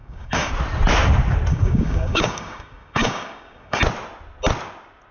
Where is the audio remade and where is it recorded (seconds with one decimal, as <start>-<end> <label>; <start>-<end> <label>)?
0.0-0.5 remade; 0.5-1.5 recorded; 1.5-3.8 remade; 3.8-5.1 recorded